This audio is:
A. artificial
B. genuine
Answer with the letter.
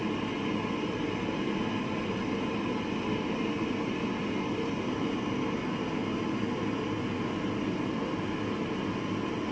B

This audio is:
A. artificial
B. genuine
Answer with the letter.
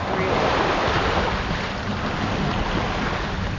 B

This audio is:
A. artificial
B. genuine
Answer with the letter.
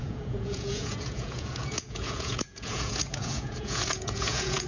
A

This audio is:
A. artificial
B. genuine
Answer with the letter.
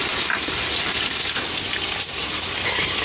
B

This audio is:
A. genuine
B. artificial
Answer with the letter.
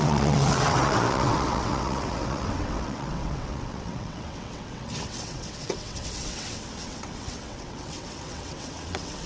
B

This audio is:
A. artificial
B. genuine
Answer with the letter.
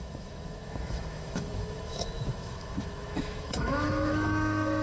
A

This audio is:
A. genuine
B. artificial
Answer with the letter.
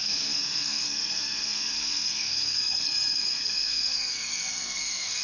B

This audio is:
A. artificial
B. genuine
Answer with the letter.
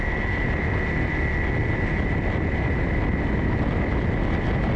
B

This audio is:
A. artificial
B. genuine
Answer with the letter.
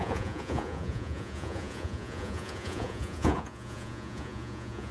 A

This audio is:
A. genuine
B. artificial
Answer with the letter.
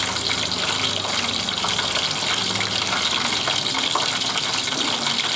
A